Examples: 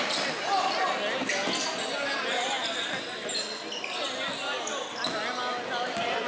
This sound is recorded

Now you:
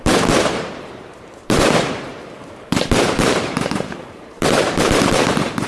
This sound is remade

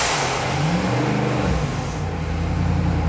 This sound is recorded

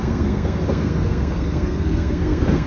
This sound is remade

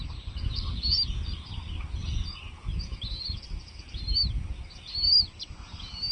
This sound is recorded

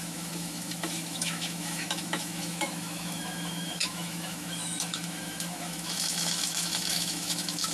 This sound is remade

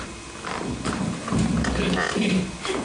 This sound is recorded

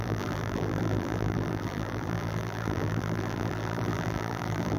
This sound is remade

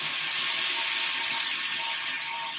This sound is recorded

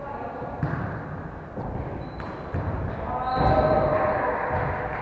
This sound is recorded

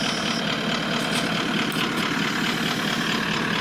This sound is recorded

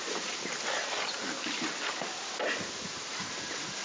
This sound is recorded